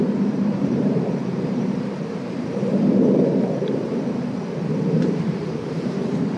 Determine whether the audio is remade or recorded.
remade